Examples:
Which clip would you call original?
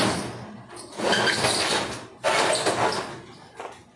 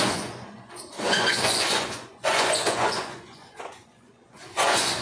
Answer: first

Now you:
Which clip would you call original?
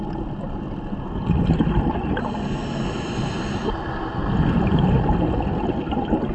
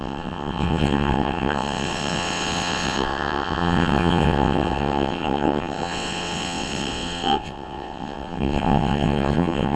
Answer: first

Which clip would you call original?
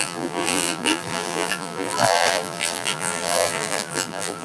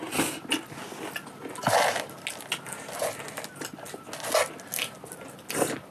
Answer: second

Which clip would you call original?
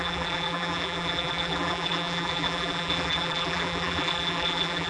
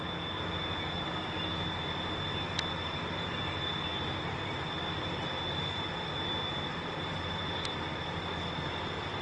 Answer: second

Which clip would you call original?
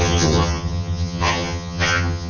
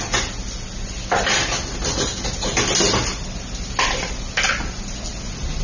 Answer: second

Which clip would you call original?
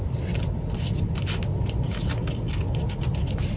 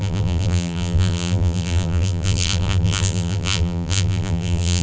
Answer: first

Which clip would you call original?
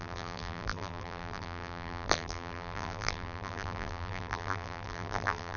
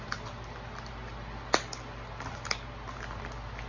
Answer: second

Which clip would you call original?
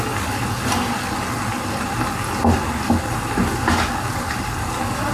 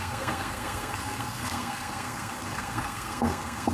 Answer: first